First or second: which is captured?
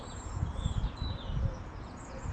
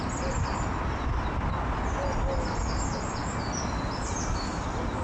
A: second